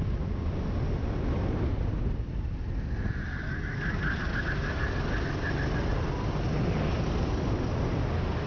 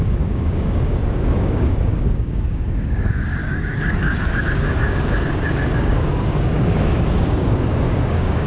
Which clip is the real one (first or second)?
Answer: first